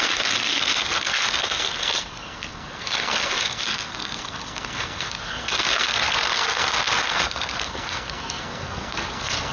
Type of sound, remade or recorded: remade